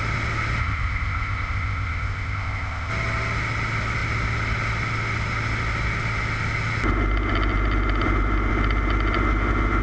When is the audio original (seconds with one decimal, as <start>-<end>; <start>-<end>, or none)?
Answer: 0.0-0.6; 2.9-9.8